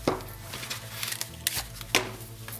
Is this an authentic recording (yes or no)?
yes